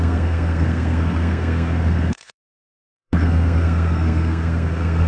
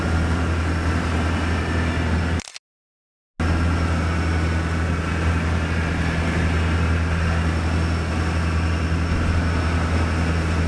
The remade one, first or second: first